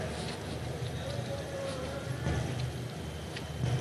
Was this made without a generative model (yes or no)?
yes